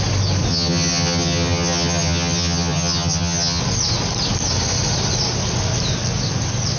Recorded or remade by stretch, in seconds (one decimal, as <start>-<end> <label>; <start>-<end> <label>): 0.0-0.5 recorded; 0.5-3.6 remade; 3.6-6.8 recorded